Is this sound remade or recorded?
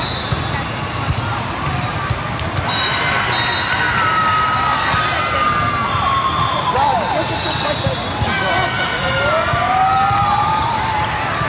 recorded